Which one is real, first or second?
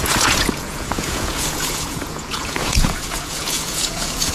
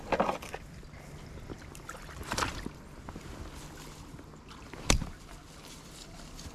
second